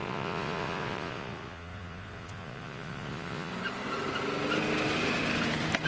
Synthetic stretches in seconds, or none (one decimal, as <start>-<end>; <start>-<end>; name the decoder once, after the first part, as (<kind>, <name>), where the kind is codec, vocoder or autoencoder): 0.0-3.5 (vocoder, Vocos)